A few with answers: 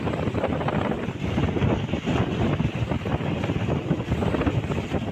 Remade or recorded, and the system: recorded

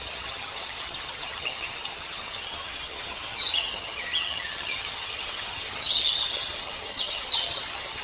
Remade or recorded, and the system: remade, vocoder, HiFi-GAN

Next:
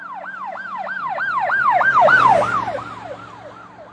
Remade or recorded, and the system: recorded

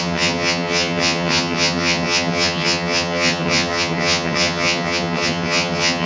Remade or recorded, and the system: remade, vocoder, HiFi-GAN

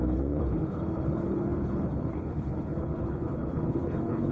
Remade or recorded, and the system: remade, codec, HILCodec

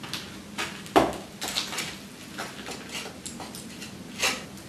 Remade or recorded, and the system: recorded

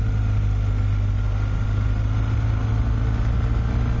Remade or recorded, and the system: recorded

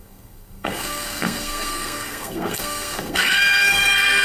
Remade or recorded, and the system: remade, codec, SNAC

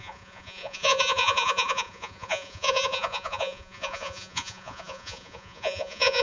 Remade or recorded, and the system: remade, vocoder, Vocos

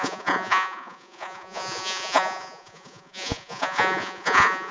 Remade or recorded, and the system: remade, vocoder, Vocos